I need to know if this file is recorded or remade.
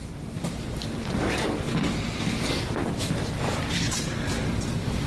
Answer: recorded